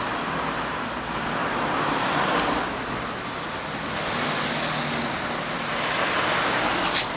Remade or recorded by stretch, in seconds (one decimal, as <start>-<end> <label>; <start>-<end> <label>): 0.0-7.2 recorded